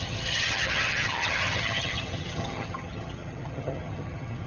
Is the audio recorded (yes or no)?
no